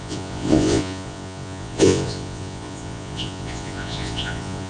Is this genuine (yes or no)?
no